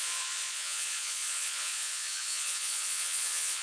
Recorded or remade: remade